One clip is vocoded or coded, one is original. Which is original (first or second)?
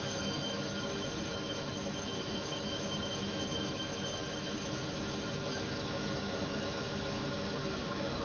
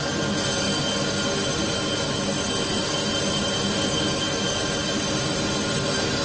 second